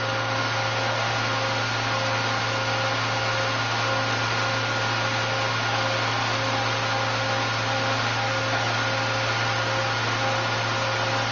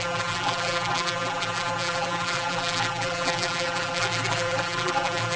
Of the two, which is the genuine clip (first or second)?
first